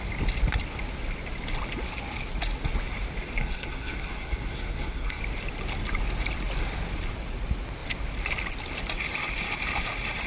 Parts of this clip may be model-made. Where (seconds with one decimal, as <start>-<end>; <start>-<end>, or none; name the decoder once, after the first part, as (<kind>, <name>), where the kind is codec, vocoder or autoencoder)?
3.4-5.2 (codec, SNAC)